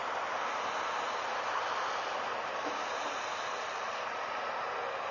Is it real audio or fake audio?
real